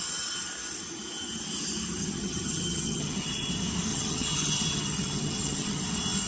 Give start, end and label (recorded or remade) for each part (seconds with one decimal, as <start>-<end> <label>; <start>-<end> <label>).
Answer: 0.0-2.0 recorded; 2.0-3.5 remade; 3.5-3.9 recorded; 3.9-5.8 remade; 5.8-6.3 recorded